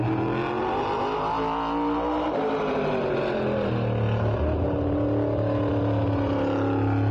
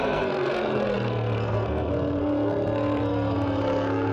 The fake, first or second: second